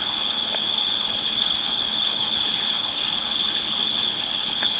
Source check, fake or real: fake